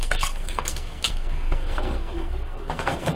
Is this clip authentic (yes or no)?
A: no